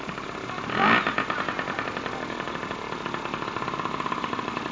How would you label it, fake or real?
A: real